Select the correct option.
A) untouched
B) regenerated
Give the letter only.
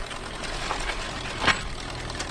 A